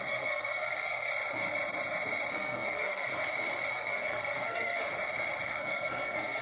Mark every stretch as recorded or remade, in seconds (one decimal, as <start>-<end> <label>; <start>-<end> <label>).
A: 0.0-1.1 remade; 1.1-2.3 recorded; 2.3-3.1 remade; 3.1-3.7 recorded; 3.7-4.8 remade; 4.8-5.4 recorded; 5.4-6.4 remade